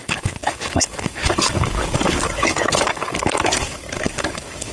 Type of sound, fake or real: fake